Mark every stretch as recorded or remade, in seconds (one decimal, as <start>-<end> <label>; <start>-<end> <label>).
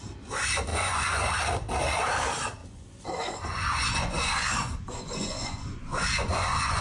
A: 0.0-0.7 recorded; 0.7-1.3 remade; 1.3-2.6 recorded; 2.6-6.8 remade